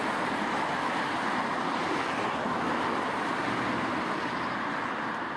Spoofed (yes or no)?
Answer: no